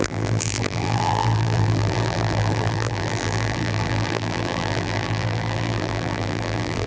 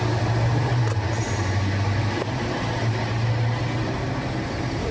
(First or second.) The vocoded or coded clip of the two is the first